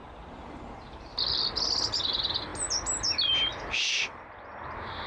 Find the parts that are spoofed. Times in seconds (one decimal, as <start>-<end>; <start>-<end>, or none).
0.0-1.2